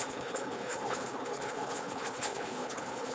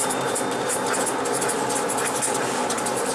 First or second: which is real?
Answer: second